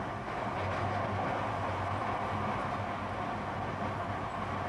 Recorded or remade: recorded